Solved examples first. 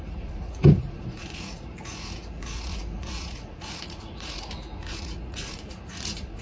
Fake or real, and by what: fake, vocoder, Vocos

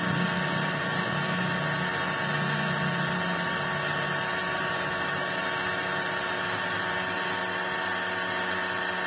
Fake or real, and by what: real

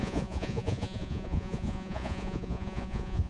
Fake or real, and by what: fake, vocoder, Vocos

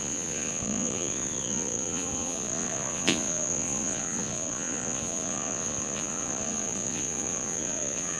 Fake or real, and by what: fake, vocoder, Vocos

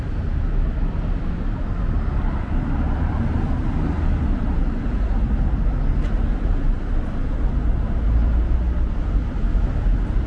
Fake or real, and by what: real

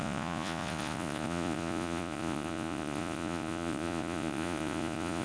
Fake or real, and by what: fake, vocoder, Vocos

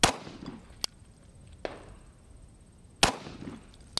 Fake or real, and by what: real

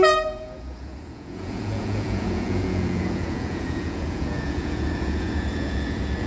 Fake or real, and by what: fake, vocoder, Vocos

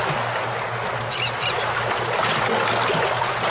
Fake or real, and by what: real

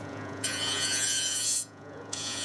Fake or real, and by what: fake, vocoder, Vocos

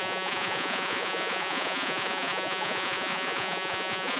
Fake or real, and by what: fake, vocoder, Vocos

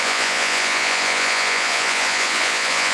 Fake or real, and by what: fake, vocoder, Vocos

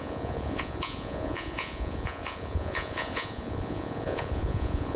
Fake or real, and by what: fake, vocoder, Vocos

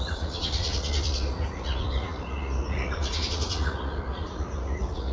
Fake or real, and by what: fake, vocoder, Vocos